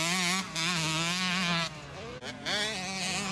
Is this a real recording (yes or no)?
yes